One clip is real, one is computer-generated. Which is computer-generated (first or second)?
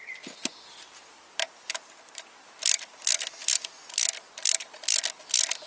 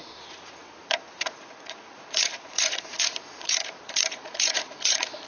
second